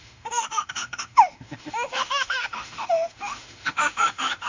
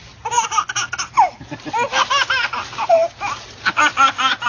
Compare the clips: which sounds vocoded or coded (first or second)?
first